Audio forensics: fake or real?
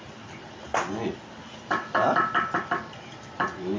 real